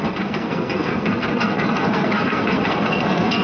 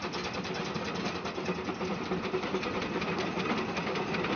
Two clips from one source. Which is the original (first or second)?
second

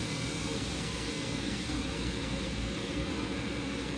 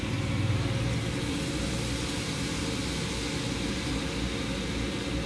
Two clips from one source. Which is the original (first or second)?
second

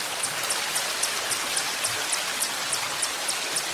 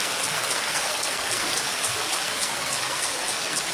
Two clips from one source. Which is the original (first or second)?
first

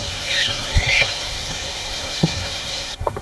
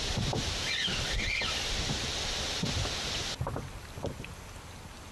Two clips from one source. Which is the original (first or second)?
second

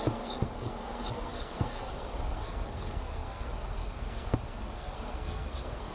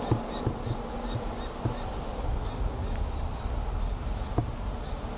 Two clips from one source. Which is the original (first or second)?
second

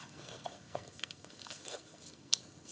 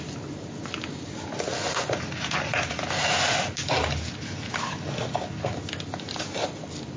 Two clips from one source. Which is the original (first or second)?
second